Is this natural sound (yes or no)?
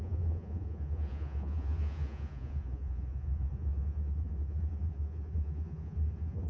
no